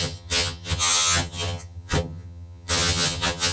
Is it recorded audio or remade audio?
remade